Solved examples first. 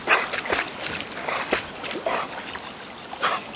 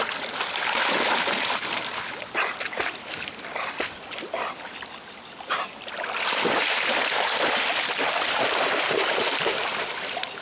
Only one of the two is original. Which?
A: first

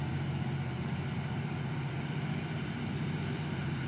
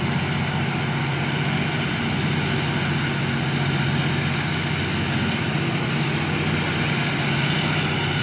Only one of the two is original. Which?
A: second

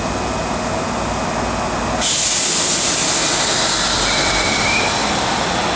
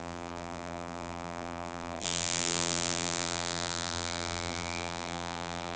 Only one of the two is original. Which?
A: first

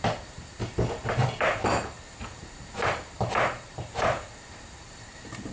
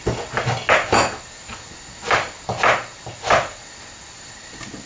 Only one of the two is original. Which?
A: second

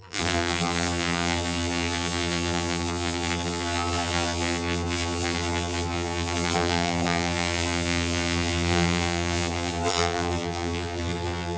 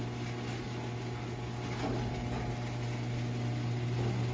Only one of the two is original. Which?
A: second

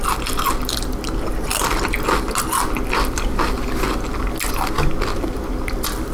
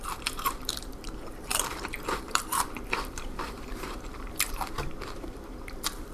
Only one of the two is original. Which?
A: first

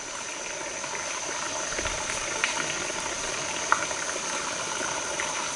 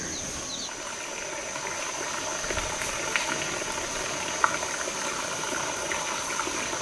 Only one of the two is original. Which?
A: second